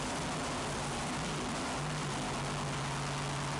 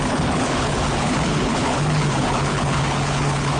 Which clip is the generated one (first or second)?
second